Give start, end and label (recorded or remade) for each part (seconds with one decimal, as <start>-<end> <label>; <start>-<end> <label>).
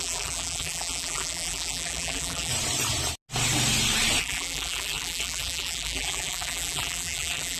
0.0-2.5 remade; 2.5-4.2 recorded; 4.2-7.6 remade